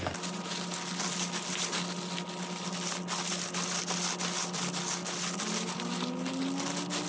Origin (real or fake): real